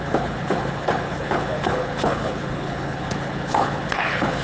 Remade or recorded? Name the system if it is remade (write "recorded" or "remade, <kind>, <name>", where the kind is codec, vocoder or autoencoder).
remade, codec, HILCodec